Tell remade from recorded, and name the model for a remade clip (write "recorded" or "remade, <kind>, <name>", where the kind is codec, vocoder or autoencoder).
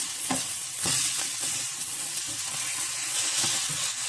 remade, vocoder, WaveNeXt